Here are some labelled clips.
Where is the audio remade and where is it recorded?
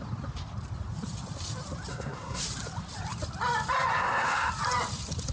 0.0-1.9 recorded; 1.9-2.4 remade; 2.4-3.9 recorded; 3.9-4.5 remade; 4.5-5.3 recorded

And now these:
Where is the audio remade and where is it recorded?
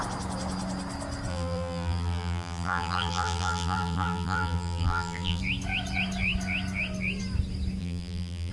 0.0-1.3 recorded; 1.3-5.4 remade; 5.4-7.8 recorded; 7.8-8.5 remade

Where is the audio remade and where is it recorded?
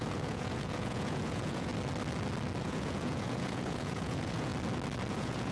0.0-1.7 remade; 1.7-2.6 recorded; 2.6-4.5 remade; 4.5-5.1 recorded; 5.1-5.5 remade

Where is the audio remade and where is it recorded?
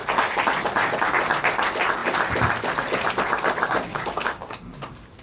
0.0-3.9 recorded; 3.9-4.8 remade; 4.8-5.2 recorded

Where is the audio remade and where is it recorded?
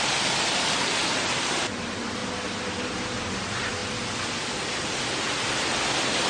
0.0-6.3 recorded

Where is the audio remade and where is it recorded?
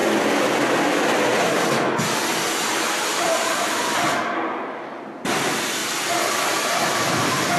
0.0-1.3 remade; 1.3-2.3 recorded; 2.3-5.8 remade; 5.8-6.5 recorded; 6.5-7.6 remade